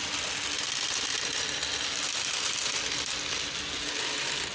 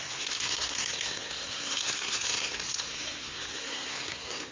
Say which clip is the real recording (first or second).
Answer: first